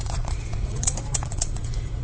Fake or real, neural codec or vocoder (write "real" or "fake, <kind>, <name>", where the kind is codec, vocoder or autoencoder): fake, vocoder, Vocos